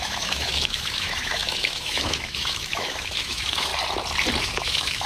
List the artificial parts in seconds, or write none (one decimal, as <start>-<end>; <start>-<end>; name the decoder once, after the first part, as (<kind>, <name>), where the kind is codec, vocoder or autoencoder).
0.0-3.7 (autoencoder, DAC-VAE); 4.4-5.1